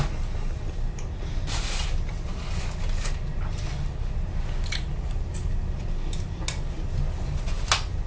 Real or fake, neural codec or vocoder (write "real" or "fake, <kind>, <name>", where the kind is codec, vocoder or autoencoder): real